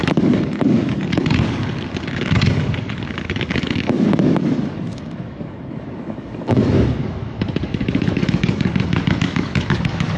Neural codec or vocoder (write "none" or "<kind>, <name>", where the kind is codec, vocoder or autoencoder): codec, DAC